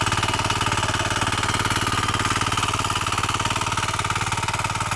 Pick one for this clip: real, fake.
real